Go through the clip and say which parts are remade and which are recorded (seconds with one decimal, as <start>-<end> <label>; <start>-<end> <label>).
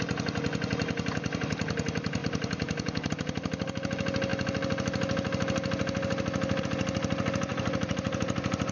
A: 0.0-2.2 recorded; 2.2-3.1 remade; 3.1-7.5 recorded; 7.5-8.7 remade